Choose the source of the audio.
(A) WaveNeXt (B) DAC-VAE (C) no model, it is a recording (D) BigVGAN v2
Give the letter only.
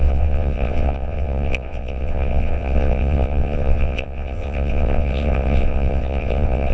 A